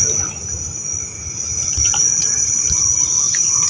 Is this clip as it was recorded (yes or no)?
yes